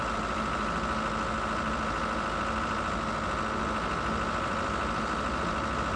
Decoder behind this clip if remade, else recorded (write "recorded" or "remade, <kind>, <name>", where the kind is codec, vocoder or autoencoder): recorded